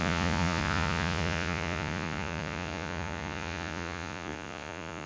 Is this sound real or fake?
fake